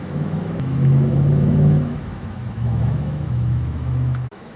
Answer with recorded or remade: remade